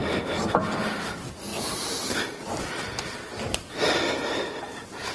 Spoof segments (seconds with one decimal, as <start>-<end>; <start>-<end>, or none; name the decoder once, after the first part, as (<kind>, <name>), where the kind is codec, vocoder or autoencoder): none